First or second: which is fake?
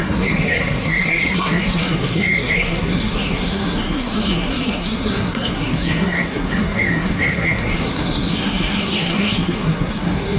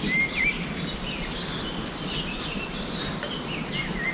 first